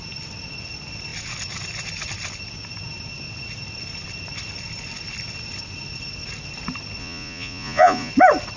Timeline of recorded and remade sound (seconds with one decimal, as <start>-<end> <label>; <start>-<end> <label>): 0.0-7.0 recorded; 7.0-8.1 remade; 8.1-8.6 recorded

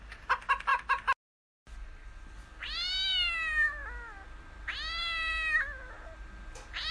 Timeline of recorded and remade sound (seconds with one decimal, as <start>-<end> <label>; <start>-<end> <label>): 0.0-6.9 recorded

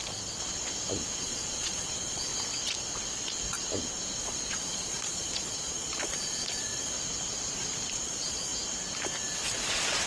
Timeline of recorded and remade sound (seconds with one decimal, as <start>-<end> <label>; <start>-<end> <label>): 0.0-1.2 recorded; 1.2-2.3 remade; 2.3-4.2 recorded; 4.2-6.7 remade; 6.7-7.9 recorded; 7.9-8.5 remade; 8.5-9.7 recorded; 9.7-10.1 remade

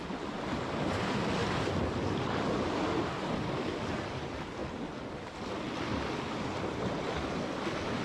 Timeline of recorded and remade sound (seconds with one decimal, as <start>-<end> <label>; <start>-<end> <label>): 0.0-8.0 recorded

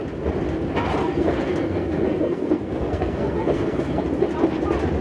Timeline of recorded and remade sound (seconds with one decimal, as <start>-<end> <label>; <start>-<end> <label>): 0.0-1.0 recorded; 1.0-4.0 remade; 4.0-5.0 recorded

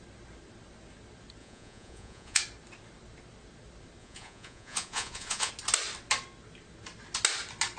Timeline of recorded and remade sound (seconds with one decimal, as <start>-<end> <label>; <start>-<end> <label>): 0.0-1.4 recorded; 1.4-2.4 remade; 2.4-4.0 recorded; 4.0-5.5 remade; 5.5-7.8 recorded

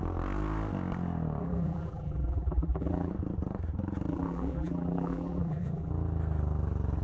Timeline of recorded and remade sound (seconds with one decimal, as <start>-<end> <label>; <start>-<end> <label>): 0.0-1.4 recorded; 1.4-3.1 remade; 3.1-4.1 recorded; 4.1-5.9 remade; 5.9-7.0 recorded

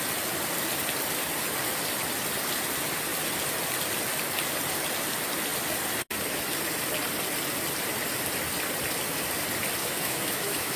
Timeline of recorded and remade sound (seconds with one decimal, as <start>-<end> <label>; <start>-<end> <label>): 0.0-9.8 recorded; 9.8-10.8 remade